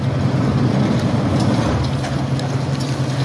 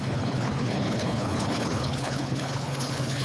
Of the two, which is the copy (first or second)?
second